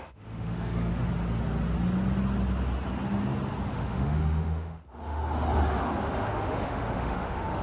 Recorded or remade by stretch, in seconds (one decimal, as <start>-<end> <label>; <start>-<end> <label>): 0.0-0.9 remade; 0.9-3.7 recorded; 3.7-5.2 remade; 5.2-5.8 recorded; 5.8-7.6 remade